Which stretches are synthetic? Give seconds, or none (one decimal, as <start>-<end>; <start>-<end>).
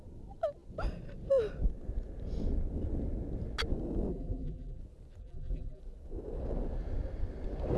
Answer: 4.1-4.8; 5.2-5.8